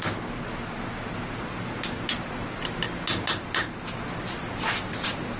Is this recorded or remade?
recorded